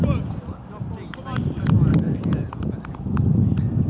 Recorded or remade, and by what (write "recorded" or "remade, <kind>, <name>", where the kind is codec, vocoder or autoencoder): recorded